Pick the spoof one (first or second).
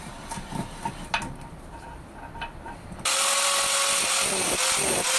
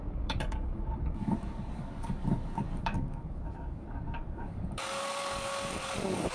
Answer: second